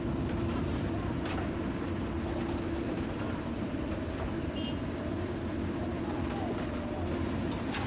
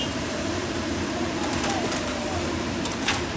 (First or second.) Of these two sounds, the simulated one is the second